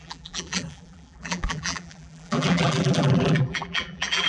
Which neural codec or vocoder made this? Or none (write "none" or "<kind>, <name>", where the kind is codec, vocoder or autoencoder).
vocoder, BigVGAN v2